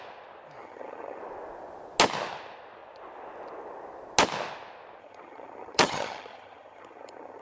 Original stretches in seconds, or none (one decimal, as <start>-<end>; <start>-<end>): 0.0-0.6; 1.2-5.0